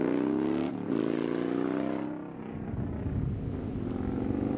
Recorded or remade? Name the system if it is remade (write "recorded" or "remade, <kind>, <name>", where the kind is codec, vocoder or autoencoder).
recorded